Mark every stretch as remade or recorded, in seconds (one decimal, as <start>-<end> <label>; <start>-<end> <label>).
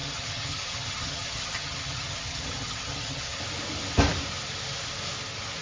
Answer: 0.0-3.4 remade; 3.4-5.6 recorded